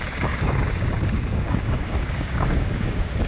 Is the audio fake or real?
fake